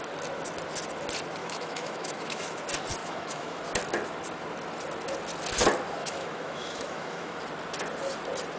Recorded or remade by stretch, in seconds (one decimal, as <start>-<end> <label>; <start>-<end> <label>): 0.0-1.4 recorded; 1.4-2.6 remade; 2.6-3.0 recorded; 3.0-3.6 remade; 3.6-6.0 recorded; 6.0-7.4 remade; 7.4-8.6 recorded